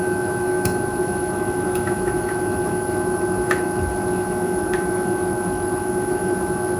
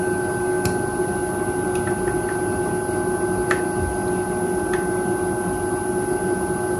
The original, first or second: second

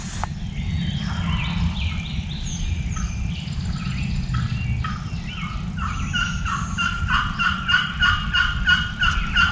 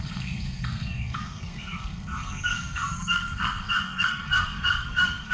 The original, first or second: first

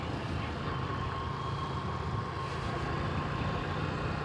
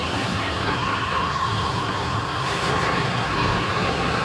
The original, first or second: first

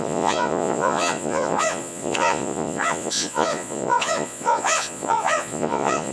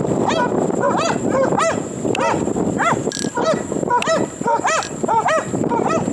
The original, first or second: second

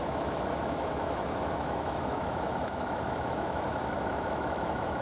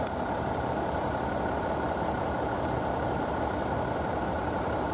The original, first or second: second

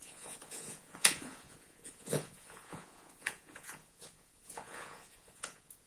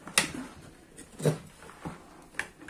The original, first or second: second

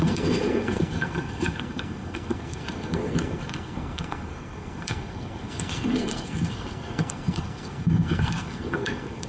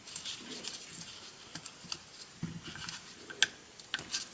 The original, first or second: second